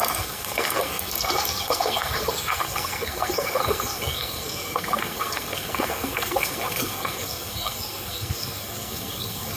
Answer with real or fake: fake